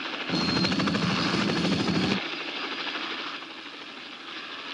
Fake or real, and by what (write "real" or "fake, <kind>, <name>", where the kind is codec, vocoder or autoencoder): real